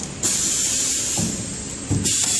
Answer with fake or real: real